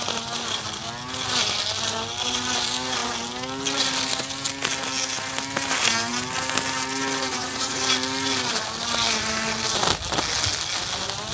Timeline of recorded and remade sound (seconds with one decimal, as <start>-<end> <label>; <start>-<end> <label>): 0.0-7.3 recorded; 7.3-7.8 remade; 7.8-11.3 recorded